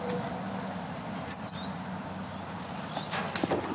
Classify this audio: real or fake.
real